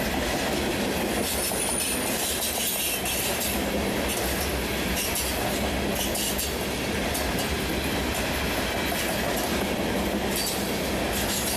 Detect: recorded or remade recorded